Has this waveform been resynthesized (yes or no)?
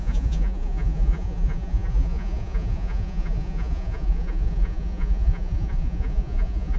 yes